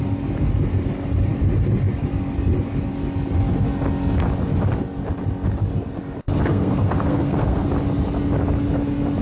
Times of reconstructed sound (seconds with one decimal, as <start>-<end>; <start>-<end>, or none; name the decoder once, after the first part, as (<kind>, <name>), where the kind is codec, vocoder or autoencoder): 6.5-7.7 (codec, SNAC)